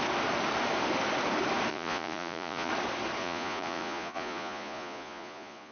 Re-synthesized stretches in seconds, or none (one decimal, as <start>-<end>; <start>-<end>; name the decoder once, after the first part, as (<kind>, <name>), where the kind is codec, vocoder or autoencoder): 1.7-2.7 (vocoder, Vocos); 3.2-5.7